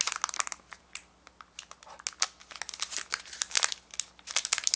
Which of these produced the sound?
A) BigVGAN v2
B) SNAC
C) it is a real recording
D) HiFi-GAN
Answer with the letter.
C